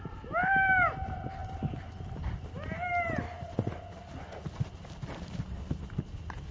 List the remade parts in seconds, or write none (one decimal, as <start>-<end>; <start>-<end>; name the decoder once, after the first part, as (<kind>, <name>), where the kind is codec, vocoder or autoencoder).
none